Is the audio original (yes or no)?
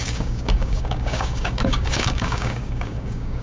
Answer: no